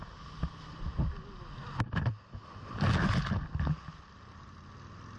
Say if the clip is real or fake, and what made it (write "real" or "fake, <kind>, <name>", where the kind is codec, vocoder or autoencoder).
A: real